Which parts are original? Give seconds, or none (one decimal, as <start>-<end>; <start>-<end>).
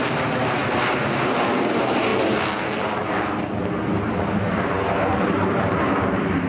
0.6-1.6; 2.1-4.2